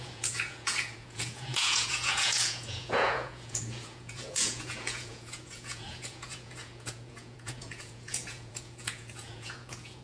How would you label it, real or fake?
fake